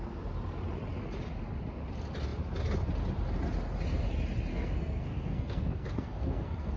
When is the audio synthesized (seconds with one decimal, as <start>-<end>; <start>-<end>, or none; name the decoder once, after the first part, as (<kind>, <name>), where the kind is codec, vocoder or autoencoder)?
4.5-6.8 (codec, SNAC)